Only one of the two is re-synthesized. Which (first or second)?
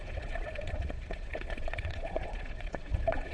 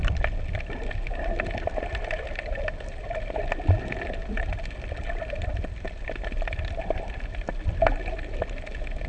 first